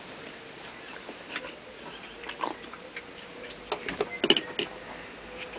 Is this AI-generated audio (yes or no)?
no